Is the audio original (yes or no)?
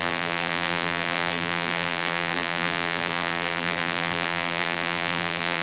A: no